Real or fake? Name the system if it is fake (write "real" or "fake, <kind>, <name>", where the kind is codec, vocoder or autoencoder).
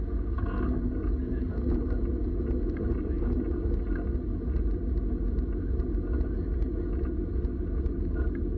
real